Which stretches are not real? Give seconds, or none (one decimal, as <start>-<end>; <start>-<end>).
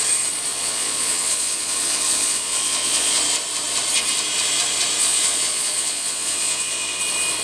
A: 0.5-3.2; 5.0-7.0